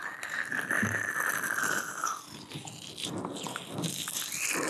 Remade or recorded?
recorded